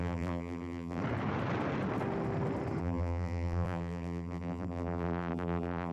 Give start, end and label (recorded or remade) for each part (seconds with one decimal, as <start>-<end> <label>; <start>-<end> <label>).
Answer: 0.0-1.0 remade; 1.0-2.8 recorded; 2.8-5.9 remade